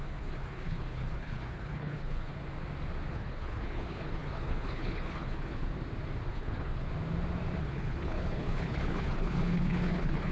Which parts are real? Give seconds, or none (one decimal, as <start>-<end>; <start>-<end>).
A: 2.3-3.1; 5.7-6.3; 6.9-7.6